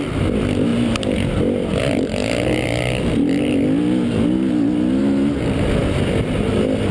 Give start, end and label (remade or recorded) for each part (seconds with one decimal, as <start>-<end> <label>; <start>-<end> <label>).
0.0-6.9 recorded